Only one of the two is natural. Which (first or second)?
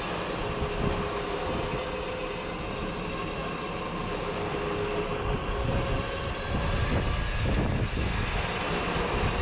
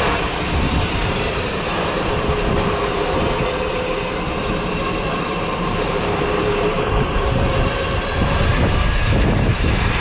first